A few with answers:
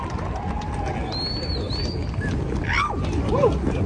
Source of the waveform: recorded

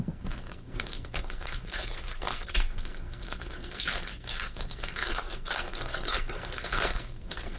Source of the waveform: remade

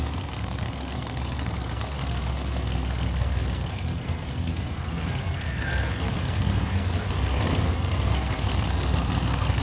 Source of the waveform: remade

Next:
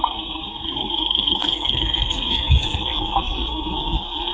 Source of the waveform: remade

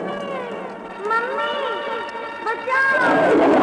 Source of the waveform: recorded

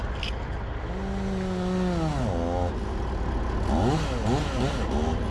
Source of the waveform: recorded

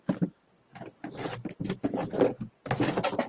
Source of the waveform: recorded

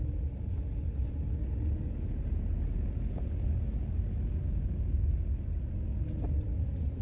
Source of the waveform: recorded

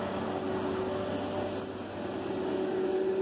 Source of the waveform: recorded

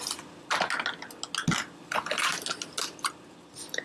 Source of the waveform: recorded